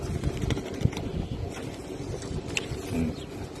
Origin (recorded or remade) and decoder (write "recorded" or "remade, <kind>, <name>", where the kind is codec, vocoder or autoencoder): recorded